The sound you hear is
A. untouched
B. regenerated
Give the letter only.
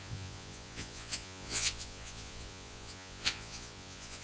B